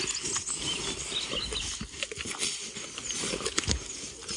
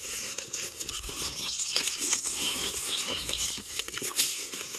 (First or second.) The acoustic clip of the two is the first